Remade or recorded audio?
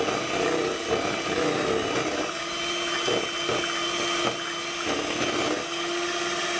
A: recorded